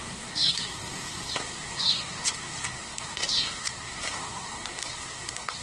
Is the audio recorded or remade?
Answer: remade